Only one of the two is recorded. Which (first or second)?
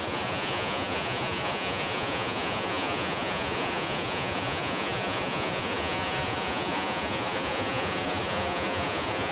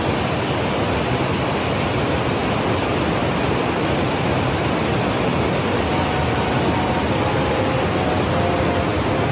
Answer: second